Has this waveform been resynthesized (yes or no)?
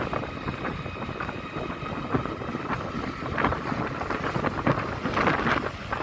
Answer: no